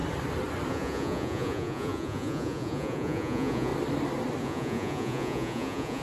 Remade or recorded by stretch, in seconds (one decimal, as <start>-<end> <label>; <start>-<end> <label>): 0.0-0.7 recorded; 0.7-3.7 remade; 3.7-4.4 recorded; 4.4-6.0 remade